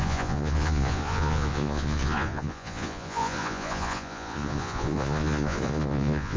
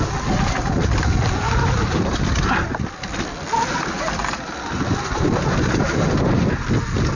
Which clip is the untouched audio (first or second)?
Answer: second